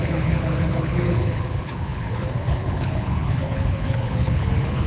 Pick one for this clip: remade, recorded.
remade